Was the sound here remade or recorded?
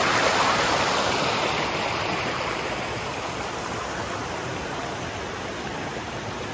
recorded